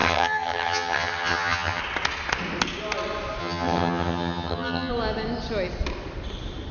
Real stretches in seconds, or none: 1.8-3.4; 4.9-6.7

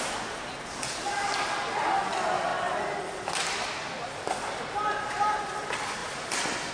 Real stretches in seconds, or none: 0.0-6.0

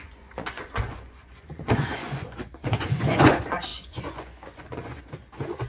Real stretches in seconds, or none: none

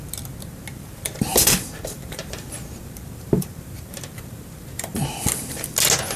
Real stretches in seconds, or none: 0.0-1.3; 5.0-6.2

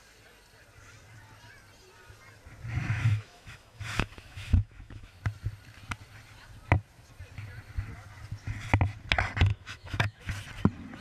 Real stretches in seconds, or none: 0.0-2.8; 5.2-9.5; 10.2-11.0

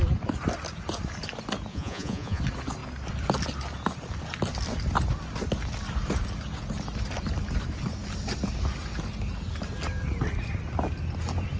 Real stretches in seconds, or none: 0.0-1.7; 2.4-11.6

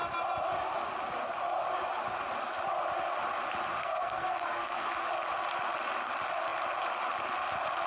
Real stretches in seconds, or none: 0.0-3.8; 4.9-7.9